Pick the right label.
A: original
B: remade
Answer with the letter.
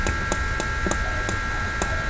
A